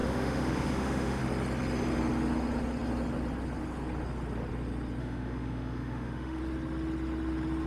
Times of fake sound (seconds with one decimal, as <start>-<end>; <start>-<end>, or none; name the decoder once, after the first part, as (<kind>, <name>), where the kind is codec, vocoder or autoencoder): 0.0-1.2 (autoencoder, DAC-VAE); 5.0-6.4